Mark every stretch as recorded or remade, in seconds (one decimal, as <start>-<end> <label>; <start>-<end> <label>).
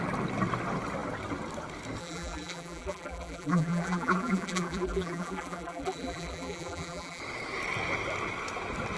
0.0-2.0 recorded; 2.0-7.2 remade; 7.2-9.0 recorded